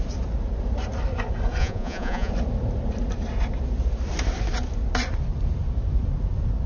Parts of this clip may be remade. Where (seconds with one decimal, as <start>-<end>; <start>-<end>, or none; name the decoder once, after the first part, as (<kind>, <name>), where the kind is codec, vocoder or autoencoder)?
1.6-2.3 (vocoder, Vocos)